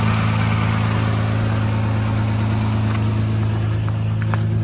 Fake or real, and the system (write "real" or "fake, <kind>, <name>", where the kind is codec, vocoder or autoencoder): real